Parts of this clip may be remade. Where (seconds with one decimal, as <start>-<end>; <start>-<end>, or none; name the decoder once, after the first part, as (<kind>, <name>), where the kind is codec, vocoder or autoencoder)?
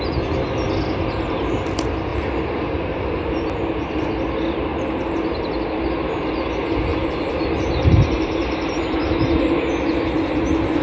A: 2.1-3.1 (vocoder, BigVGAN v2); 6.9-9.0